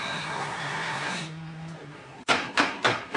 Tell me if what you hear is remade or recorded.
remade